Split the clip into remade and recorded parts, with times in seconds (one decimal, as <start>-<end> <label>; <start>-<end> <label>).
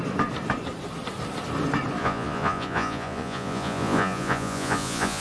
0.0-2.0 recorded; 2.0-5.2 remade